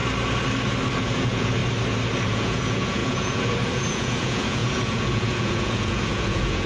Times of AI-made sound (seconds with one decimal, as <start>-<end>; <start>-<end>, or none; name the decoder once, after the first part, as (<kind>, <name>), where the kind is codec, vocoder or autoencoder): 1.0-1.6 (vocoder, Vocos); 2.3-6.7